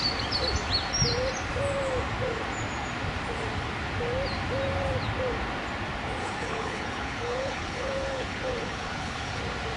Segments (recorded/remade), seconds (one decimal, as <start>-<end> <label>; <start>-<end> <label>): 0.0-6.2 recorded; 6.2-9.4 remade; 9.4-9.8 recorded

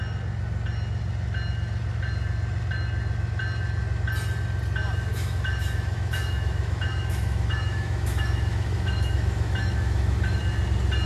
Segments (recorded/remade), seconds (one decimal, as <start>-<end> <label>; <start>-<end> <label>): 0.0-5.1 recorded; 5.1-10.4 remade; 10.4-11.1 recorded

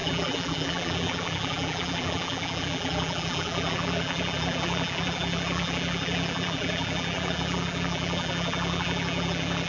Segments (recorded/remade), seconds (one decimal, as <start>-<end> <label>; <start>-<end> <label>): 0.0-9.7 remade

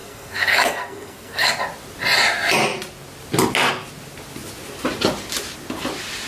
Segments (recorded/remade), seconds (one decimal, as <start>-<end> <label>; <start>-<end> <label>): 0.0-1.5 remade; 1.5-6.3 recorded

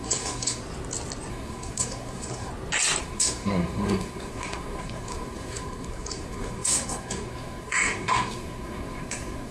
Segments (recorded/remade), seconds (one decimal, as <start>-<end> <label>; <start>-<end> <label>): 0.0-0.6 remade; 0.6-1.3 recorded; 1.3-2.5 remade; 2.5-3.0 recorded; 3.0-9.5 remade

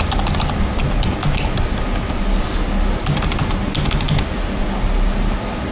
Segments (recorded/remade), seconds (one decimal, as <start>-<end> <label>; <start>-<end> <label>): 0.0-5.7 recorded